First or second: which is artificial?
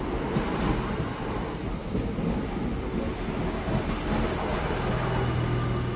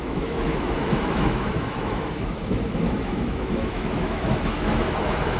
second